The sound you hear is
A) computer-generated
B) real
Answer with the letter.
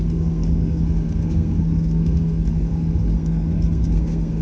A